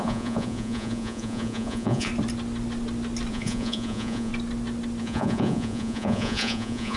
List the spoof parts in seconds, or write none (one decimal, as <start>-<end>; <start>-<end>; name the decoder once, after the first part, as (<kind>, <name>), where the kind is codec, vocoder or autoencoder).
0.0-2.1 (vocoder, Vocos); 3.3-4.3; 5.0-7.0